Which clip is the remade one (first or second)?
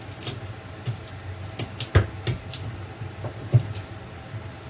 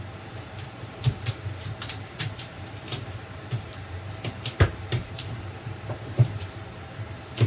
second